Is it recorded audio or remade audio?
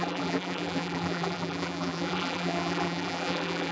remade